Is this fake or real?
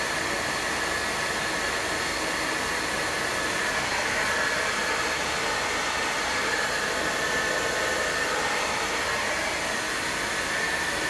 real